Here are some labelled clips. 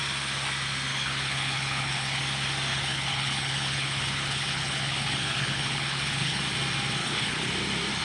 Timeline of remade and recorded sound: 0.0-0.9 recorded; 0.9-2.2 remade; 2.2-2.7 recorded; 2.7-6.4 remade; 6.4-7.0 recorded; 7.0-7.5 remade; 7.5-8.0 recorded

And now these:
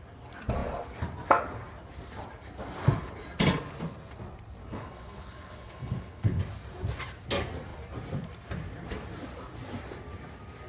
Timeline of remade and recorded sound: 0.0-4.6 recorded; 4.6-6.4 remade; 6.4-10.7 recorded

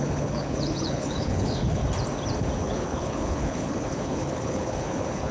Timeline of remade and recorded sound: 0.0-1.8 remade; 1.8-2.6 recorded; 2.6-5.3 remade

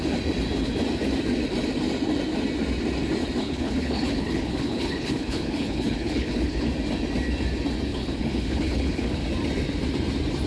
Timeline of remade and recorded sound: 0.0-3.4 recorded; 3.4-6.7 remade; 6.7-7.9 recorded; 7.9-9.2 remade; 9.2-10.5 recorded

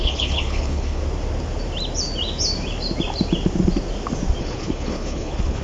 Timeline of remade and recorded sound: 0.0-1.0 remade; 1.0-4.4 recorded; 4.4-5.6 remade

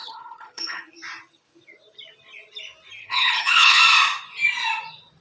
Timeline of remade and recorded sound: 0.0-0.8 remade; 0.8-3.0 recorded; 3.0-3.8 remade; 3.8-5.2 recorded

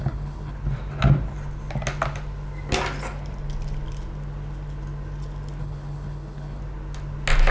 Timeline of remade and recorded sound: 0.0-0.5 remade; 0.5-5.6 recorded; 5.6-6.6 remade; 6.6-7.5 recorded